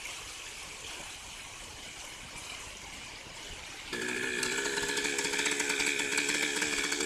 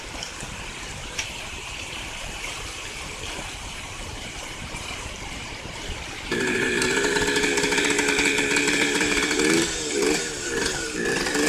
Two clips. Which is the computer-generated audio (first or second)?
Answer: second